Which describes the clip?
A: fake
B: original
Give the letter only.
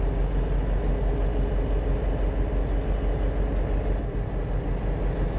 B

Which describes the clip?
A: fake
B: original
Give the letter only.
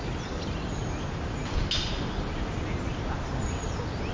B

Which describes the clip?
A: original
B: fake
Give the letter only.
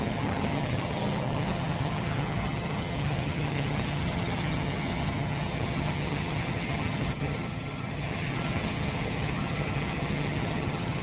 B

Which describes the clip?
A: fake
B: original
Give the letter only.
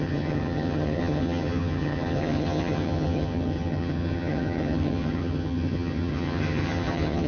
A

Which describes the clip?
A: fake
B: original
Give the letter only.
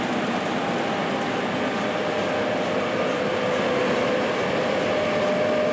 B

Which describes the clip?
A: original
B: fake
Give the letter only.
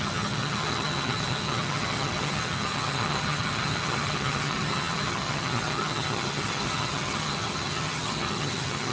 B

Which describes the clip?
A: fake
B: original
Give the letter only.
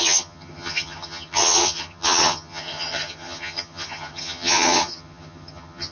A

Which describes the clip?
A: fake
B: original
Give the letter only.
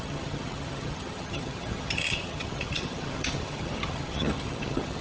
A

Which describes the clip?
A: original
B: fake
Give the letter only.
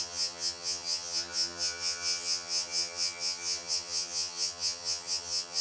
B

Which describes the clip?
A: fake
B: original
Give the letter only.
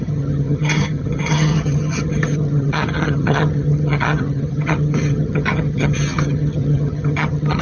A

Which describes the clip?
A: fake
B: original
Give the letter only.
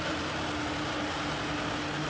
B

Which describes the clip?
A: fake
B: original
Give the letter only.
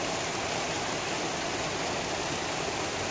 B